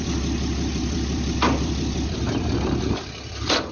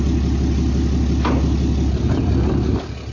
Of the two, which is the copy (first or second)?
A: first